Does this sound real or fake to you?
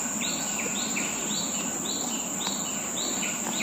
real